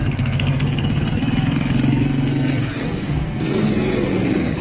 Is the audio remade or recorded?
remade